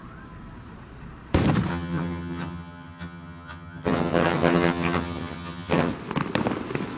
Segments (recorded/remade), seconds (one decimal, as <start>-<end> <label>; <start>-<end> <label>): 0.0-1.7 recorded; 1.7-5.9 remade; 5.9-7.0 recorded